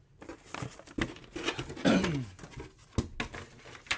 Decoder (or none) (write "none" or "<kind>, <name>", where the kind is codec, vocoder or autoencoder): none